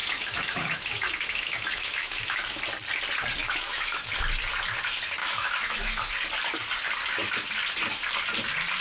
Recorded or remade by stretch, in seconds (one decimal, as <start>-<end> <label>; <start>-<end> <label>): 0.0-2.6 remade; 2.6-3.4 recorded; 3.4-4.1 remade; 4.1-5.2 recorded; 5.2-6.1 remade; 6.1-8.8 recorded

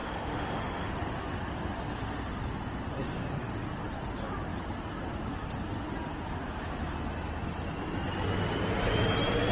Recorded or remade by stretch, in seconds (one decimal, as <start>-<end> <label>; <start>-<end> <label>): 0.0-0.9 remade; 0.9-9.5 recorded

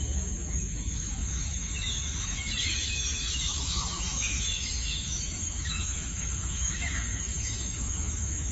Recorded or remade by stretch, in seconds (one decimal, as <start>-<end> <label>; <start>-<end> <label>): 0.0-8.5 remade

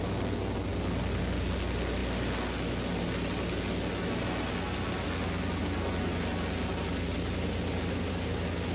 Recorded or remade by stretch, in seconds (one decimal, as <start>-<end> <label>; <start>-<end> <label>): 0.0-8.7 recorded

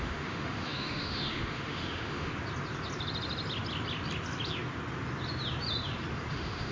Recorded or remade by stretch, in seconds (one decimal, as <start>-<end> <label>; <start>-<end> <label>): 0.0-2.3 remade; 2.3-6.3 recorded; 6.3-6.7 remade

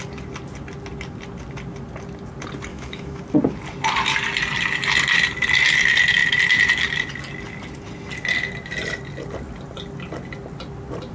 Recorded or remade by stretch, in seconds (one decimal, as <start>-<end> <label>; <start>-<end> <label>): 0.0-2.7 recorded; 2.7-3.2 remade; 3.2-11.1 recorded

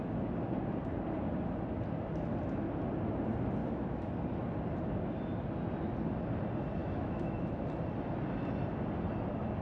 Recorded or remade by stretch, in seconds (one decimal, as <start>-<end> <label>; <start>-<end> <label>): 0.0-3.6 recorded; 3.6-4.1 remade; 4.1-6.8 recorded; 6.8-7.7 remade; 7.7-9.6 recorded

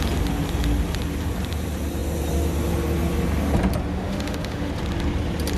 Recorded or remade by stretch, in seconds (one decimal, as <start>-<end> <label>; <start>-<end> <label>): 0.0-3.9 recorded; 3.9-4.7 remade; 4.7-5.6 recorded